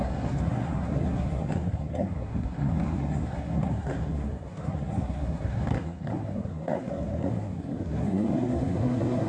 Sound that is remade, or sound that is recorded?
remade